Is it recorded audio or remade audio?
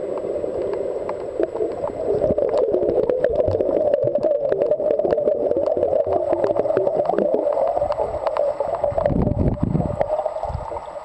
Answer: recorded